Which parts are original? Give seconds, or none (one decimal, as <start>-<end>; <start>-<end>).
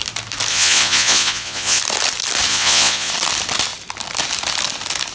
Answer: 0.0-0.5; 1.8-2.5; 3.1-5.1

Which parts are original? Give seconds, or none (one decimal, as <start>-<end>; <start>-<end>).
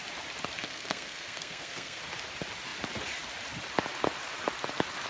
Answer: 0.0-0.6; 2.0-5.1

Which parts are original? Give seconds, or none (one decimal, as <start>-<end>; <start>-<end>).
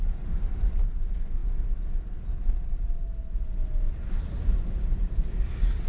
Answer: 1.4-3.2